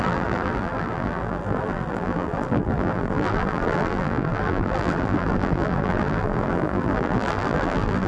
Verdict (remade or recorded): remade